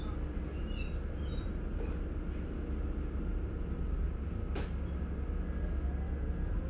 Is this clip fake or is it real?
real